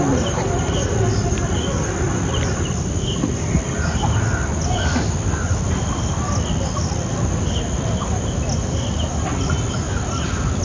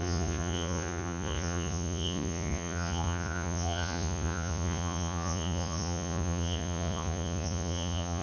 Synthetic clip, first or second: second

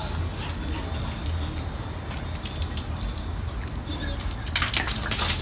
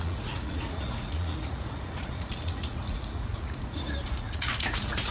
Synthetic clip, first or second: second